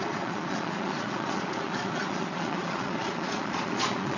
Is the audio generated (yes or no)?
yes